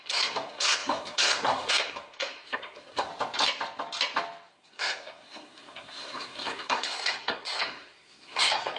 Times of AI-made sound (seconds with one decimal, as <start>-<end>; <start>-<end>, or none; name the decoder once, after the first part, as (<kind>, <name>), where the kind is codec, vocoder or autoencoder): 0.0-3.1 (codec, SNAC); 4.5-8.8